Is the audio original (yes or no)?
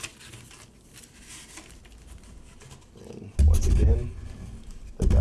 yes